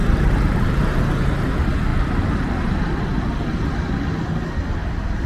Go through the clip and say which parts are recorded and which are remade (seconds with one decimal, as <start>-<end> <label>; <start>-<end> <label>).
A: 0.0-1.0 remade; 1.0-5.3 recorded